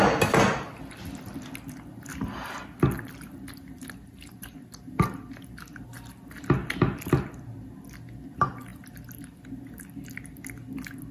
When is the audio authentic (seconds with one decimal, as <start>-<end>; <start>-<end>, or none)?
0.0-11.1